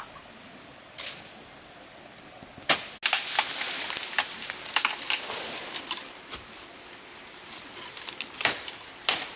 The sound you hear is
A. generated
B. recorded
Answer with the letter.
B